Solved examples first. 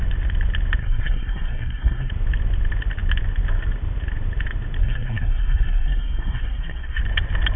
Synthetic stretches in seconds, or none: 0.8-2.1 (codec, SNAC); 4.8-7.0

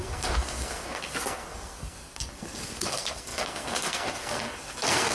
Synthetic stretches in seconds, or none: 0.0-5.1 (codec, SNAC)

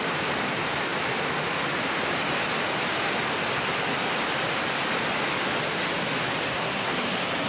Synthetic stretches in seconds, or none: 6.5-7.0 (codec, SNAC)

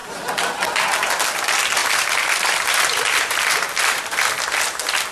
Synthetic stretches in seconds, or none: 1.8-4.6 (vocoder, BigVGAN v2)

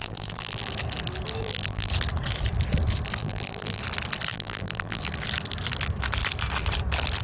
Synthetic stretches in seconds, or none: 0.0-0.7 (vocoder, BigVGAN v2); 1.4-1.9; 3.2-3.8; 4.3-5.0